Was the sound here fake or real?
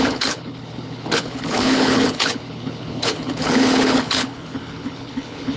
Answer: fake